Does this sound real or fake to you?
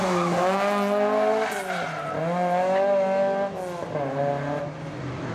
real